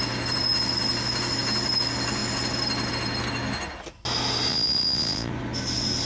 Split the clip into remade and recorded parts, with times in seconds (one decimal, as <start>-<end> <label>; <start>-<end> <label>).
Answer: 0.0-4.5 recorded; 4.5-5.3 remade; 5.3-6.0 recorded